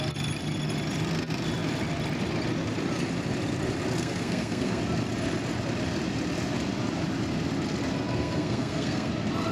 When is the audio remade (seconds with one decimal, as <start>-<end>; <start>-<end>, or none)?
4.0-4.8; 8.1-9.1